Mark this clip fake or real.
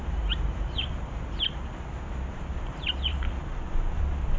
fake